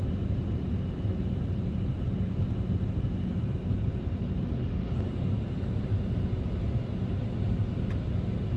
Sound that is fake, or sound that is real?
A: real